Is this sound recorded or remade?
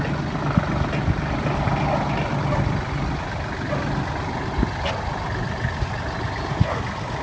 recorded